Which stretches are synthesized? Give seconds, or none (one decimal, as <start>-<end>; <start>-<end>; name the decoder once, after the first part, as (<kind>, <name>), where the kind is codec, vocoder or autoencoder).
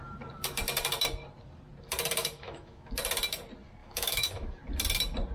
2.2-2.9 (autoencoder, DAC-VAE); 3.8-4.5